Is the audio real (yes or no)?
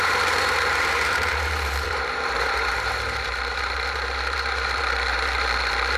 no